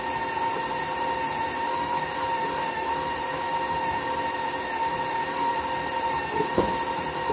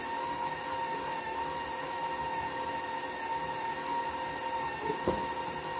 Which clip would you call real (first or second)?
second